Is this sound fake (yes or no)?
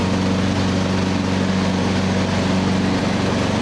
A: no